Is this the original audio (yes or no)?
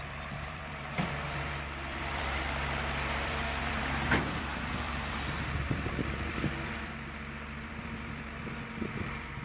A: no